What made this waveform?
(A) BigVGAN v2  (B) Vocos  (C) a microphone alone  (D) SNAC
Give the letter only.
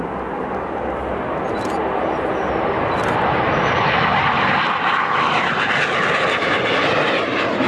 C